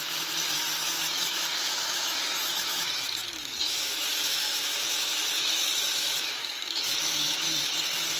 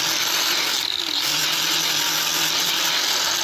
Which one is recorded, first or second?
second